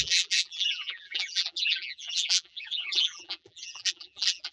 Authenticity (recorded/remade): remade